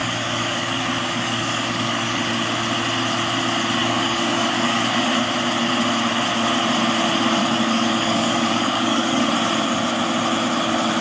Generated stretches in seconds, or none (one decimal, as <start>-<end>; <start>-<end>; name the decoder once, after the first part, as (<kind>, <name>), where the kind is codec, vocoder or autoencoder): 0.0-2.2 (codec, DAC); 3.8-5.1; 7.4-9.3